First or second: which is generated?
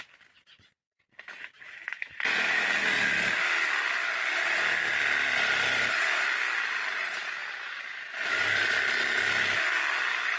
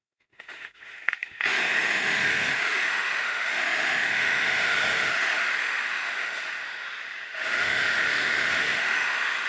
second